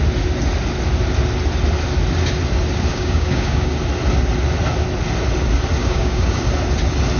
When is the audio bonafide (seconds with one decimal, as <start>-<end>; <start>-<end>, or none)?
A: 0.0-2.9; 3.7-5.8; 6.4-7.2